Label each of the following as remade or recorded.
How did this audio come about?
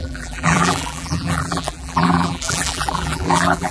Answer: remade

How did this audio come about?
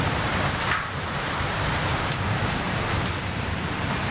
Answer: remade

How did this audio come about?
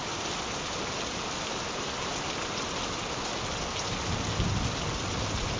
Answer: remade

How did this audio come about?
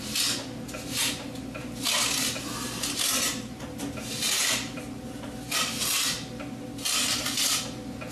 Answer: recorded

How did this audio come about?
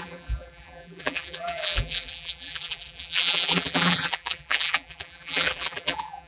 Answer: remade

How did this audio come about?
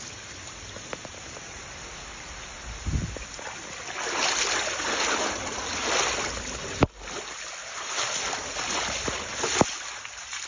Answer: recorded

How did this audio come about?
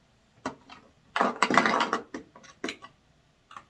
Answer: recorded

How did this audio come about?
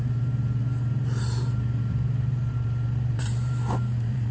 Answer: remade